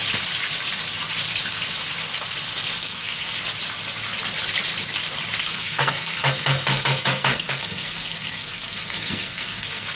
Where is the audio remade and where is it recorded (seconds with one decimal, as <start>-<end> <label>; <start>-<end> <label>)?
0.0-2.8 recorded; 2.8-3.4 remade; 3.4-5.4 recorded; 5.4-10.0 remade